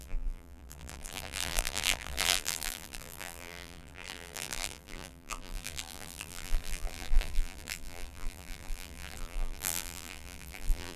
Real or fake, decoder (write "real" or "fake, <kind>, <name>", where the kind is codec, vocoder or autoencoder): fake, vocoder, BigVGAN v2